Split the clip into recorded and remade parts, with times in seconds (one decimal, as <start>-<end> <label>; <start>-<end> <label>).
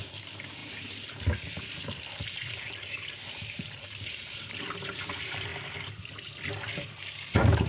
0.0-0.6 remade; 0.6-2.9 recorded; 2.9-5.5 remade; 5.5-6.7 recorded; 6.7-7.7 remade